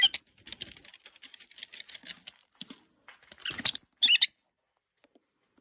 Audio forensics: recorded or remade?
recorded